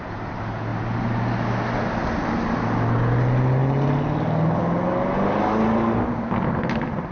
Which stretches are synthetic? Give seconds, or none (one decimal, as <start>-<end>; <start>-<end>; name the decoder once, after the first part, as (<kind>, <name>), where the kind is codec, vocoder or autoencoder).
none